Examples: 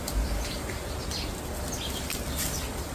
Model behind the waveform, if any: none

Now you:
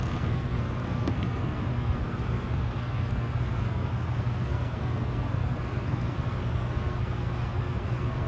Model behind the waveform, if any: codec, SNAC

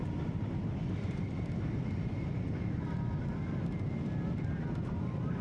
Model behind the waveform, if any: none